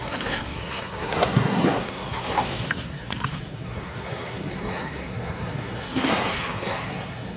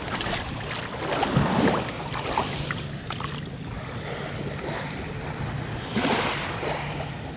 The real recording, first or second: second